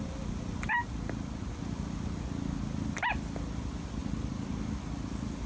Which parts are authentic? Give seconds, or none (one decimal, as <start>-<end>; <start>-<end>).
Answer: 0.0-4.0; 4.9-5.5